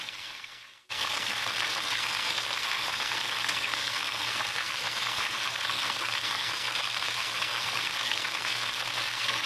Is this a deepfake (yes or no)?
yes